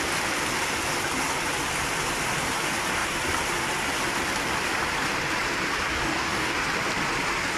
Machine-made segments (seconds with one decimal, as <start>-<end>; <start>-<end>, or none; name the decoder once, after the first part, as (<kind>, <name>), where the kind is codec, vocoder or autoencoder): 5.9-6.5 (codec, DAC)